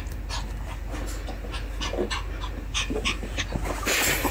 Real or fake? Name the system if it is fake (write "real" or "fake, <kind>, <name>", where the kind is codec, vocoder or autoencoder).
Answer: real